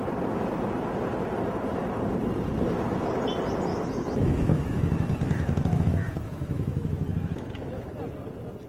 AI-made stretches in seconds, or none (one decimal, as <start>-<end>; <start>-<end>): 3.7-8.0